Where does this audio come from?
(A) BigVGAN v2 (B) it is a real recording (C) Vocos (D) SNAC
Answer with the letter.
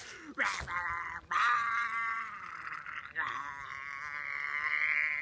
B